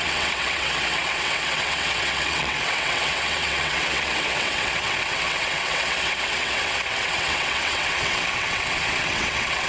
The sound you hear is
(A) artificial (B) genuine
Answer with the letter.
A